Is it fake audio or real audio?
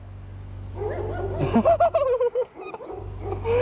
real